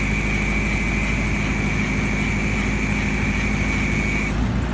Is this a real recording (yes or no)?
yes